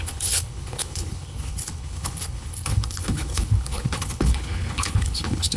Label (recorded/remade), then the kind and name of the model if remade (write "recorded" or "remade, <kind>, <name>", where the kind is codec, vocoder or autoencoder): remade, codec, HILCodec